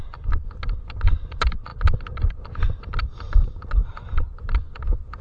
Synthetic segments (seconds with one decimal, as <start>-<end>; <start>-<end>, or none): none